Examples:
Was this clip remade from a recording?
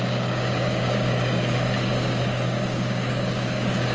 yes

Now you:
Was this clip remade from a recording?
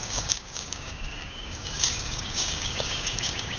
yes